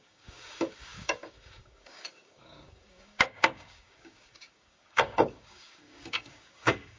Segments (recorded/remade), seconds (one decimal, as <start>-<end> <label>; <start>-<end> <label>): 0.0-7.0 remade

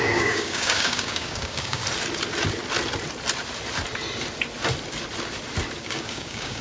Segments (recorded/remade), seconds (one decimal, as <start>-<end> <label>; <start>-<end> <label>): 0.0-1.8 remade; 1.8-5.8 recorded; 5.8-6.6 remade

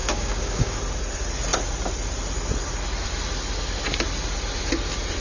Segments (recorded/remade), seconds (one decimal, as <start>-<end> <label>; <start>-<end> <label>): 0.0-0.8 remade; 0.8-5.2 recorded

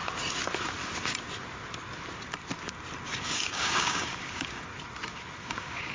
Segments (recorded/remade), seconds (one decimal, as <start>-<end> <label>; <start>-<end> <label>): 0.0-3.5 recorded; 3.5-4.7 remade; 4.7-5.4 recorded; 5.4-5.9 remade